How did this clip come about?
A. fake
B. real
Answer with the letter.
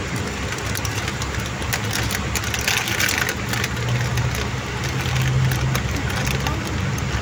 B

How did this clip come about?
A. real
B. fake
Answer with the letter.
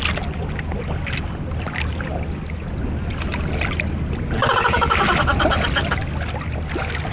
A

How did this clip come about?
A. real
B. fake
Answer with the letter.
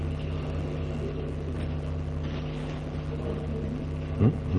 A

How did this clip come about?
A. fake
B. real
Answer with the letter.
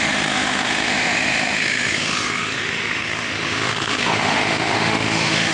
A